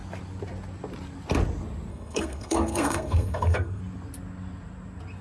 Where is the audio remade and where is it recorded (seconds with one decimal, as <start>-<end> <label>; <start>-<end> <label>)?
0.0-1.9 recorded; 1.9-3.8 remade; 3.8-5.2 recorded